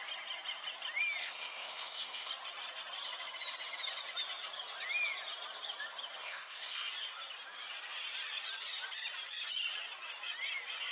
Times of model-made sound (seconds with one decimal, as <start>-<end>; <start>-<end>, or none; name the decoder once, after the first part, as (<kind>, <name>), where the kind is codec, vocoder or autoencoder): 1.2-2.3 (codec, SNAC); 6.2-6.9